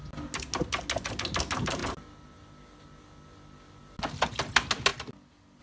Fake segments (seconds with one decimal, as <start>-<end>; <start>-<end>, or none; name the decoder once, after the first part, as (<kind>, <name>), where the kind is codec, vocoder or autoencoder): none